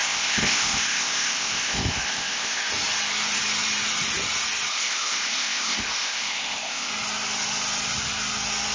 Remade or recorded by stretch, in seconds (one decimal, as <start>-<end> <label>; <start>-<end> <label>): 0.0-2.7 remade; 2.7-4.7 recorded; 4.7-6.9 remade; 6.9-8.7 recorded